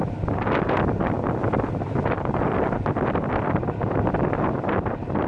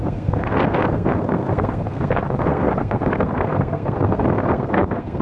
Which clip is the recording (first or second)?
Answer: first